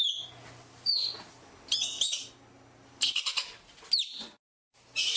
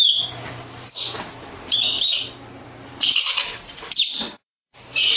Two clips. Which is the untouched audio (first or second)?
first